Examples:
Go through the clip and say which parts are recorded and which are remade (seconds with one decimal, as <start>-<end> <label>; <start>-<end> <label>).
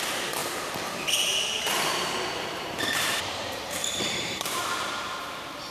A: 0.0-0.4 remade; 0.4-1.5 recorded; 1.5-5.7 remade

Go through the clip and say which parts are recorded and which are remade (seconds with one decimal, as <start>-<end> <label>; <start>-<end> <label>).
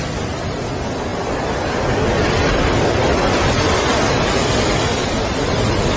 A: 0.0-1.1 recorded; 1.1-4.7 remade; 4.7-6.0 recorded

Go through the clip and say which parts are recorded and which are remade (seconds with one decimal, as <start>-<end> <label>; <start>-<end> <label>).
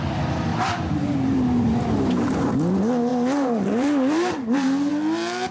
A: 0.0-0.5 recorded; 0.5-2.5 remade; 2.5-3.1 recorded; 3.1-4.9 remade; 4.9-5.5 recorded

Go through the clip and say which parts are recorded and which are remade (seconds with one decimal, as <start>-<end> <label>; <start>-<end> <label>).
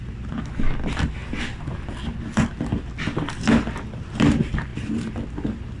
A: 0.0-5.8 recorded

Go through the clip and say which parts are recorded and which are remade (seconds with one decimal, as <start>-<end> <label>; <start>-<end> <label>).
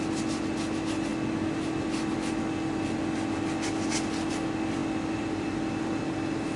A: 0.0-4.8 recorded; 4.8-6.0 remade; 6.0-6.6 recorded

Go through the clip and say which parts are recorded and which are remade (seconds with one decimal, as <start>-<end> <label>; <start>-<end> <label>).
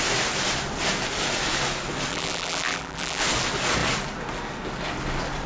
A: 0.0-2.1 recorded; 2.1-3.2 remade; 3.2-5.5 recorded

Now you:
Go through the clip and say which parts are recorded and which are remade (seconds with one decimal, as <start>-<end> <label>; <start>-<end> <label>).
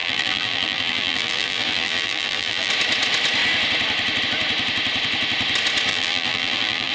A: 0.0-2.7 remade; 2.7-5.9 recorded; 5.9-6.9 remade